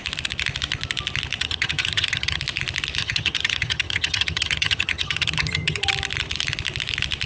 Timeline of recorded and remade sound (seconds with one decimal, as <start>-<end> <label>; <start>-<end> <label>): 0.0-1.4 recorded; 1.4-2.4 remade; 2.4-3.0 recorded; 3.0-5.9 remade; 5.9-7.3 recorded